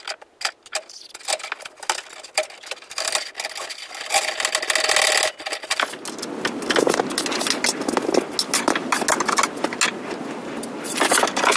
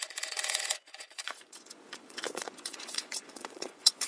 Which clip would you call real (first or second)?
first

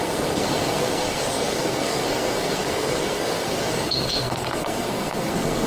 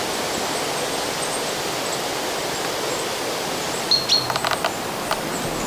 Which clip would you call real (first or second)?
second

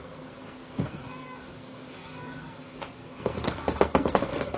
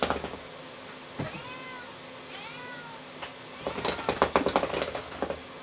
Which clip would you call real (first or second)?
second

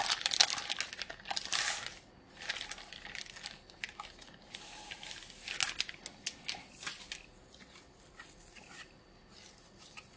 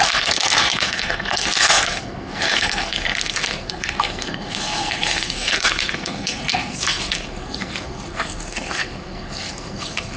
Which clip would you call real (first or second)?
first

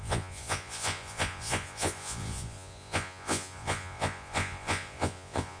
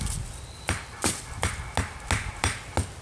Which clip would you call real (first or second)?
second